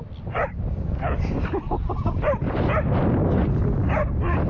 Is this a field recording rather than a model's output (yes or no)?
yes